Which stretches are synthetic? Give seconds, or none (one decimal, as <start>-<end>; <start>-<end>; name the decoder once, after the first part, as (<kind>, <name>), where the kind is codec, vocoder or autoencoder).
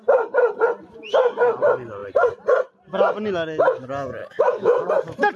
4.2-4.9 (autoencoder, DAC-VAE)